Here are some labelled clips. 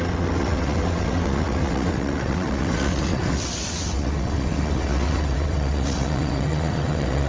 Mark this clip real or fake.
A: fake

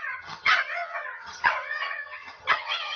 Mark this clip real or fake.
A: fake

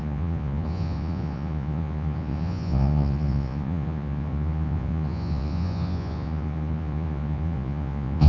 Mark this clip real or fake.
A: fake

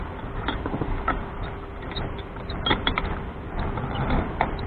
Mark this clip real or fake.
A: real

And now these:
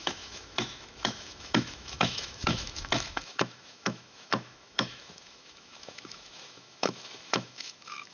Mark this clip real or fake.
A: fake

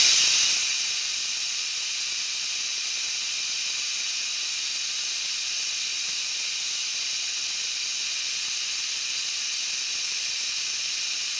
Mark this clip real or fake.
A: real